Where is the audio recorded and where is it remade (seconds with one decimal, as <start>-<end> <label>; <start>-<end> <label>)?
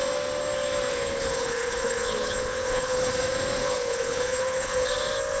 0.0-0.9 recorded; 0.9-3.1 remade; 3.1-3.6 recorded; 3.6-4.9 remade; 4.9-5.4 recorded